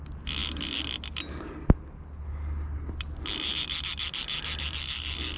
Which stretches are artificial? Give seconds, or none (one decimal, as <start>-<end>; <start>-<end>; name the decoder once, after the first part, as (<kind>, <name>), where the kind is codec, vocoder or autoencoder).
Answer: none